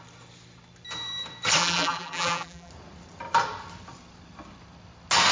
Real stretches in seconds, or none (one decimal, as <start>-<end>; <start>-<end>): 0.0-1.6; 2.7-5.3